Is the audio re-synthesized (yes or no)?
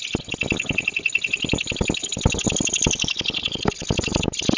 no